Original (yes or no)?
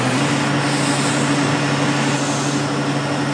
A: yes